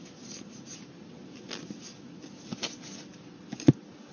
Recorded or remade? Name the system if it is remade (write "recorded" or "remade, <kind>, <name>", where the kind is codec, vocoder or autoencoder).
recorded